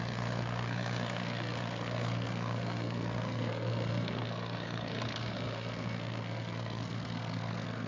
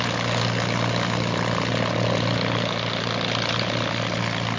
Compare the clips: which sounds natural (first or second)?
second